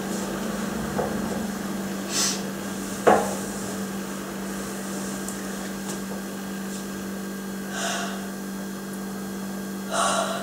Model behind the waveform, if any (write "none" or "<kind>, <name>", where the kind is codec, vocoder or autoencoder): none